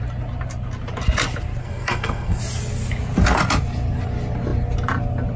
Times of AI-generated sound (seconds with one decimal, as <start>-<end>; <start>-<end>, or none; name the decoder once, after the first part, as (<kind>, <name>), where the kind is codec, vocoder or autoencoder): 1.6-2.4 (codec, SNAC)